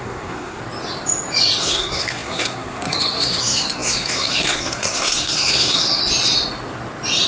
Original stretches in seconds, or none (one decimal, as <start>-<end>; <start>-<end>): 0.6-1.6; 6.0-7.3

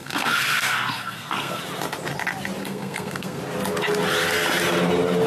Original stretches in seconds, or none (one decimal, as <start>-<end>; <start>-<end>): 1.6-2.6; 3.4-5.3

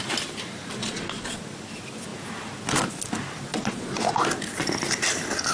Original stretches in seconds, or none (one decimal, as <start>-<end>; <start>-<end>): 0.0-0.8; 1.4-3.5; 4.2-5.5